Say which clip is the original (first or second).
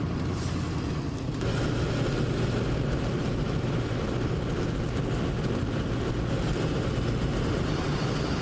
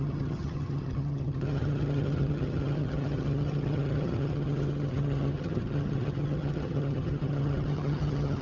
first